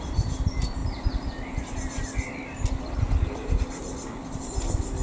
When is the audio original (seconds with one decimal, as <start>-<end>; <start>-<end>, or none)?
0.0-5.0